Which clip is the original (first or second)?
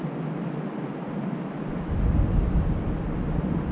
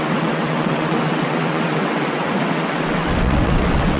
first